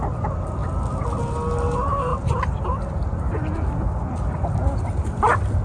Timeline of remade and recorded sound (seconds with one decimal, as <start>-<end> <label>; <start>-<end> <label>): 0.0-5.6 recorded